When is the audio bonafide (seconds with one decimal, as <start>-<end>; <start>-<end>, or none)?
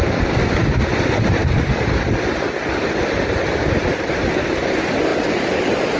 0.0-6.0